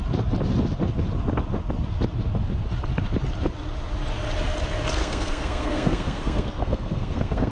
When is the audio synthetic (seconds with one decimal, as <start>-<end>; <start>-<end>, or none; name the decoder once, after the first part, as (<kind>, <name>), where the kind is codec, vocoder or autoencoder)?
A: 5.0-7.5 (codec, SNAC)